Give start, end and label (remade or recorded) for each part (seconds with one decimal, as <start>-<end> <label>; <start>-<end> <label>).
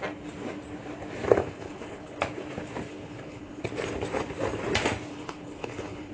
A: 0.0-1.4 recorded; 1.4-2.2 remade; 2.2-2.9 recorded; 2.9-3.6 remade; 3.6-5.1 recorded; 5.1-6.1 remade